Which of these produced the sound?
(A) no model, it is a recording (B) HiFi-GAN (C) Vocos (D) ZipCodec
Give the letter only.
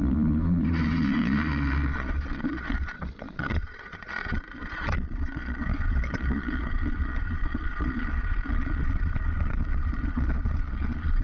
C